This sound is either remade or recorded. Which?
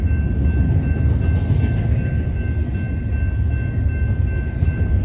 recorded